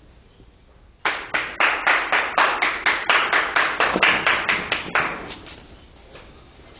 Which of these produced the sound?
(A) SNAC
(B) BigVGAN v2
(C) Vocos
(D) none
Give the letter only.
D